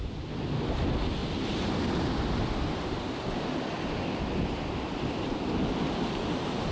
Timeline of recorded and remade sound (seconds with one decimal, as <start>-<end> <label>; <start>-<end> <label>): 0.0-1.2 recorded; 1.2-5.2 remade; 5.2-6.7 recorded